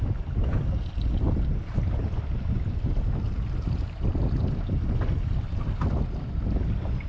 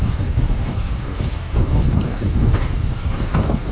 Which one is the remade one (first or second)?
second